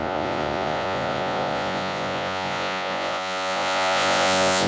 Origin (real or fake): fake